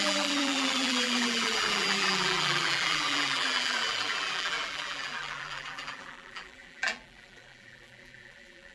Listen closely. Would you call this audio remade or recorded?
remade